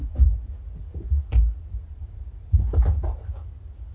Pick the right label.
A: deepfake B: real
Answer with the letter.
B